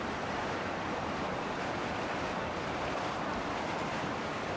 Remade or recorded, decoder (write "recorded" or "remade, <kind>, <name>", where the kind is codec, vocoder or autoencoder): remade, vocoder, BigVGAN v2